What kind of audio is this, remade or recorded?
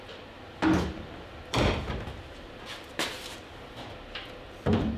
remade